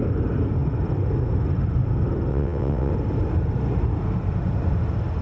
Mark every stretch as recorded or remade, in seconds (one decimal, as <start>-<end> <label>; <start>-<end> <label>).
0.0-2.3 recorded; 2.3-2.9 remade; 2.9-5.2 recorded